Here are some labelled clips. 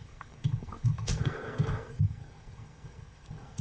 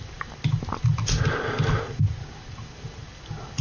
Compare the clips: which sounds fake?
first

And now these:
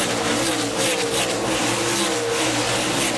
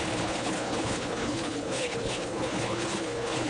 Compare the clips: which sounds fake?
second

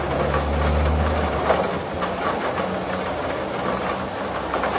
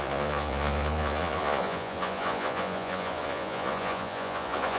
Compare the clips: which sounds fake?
second